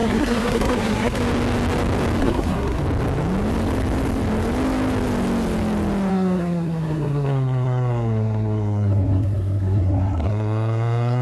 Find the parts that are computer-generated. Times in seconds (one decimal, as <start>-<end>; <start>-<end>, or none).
0.0-1.2; 2.2-2.8; 6.1-11.2